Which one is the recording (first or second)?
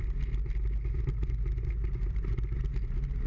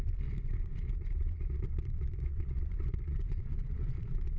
first